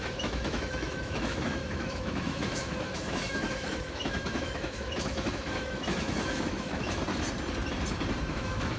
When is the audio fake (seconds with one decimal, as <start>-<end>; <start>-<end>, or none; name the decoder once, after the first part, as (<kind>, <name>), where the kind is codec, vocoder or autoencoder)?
0.0-7.0 (autoencoder, DAC-VAE); 8.3-8.8